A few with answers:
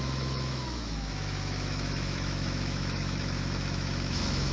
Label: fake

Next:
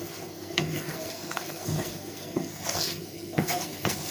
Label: fake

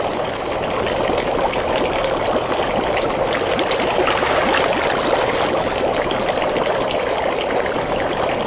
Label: real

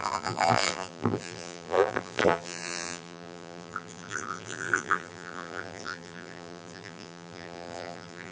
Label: fake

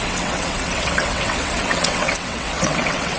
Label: fake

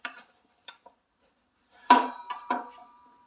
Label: fake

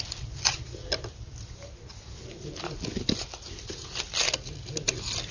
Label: real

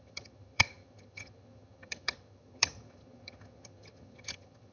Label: fake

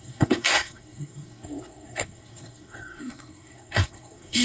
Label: fake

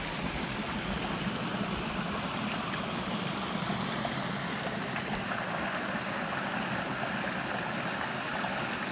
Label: real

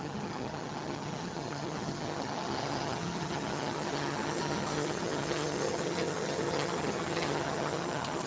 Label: fake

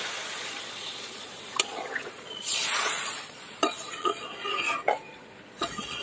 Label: fake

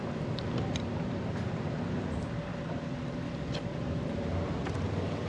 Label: fake